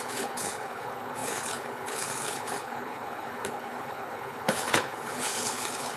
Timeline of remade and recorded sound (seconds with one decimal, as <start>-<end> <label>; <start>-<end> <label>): 0.0-6.0 remade